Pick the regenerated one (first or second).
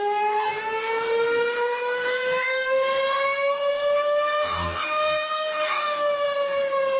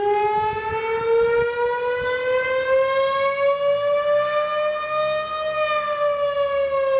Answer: first